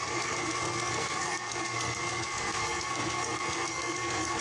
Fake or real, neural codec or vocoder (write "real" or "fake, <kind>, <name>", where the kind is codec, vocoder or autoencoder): fake, codec, SNAC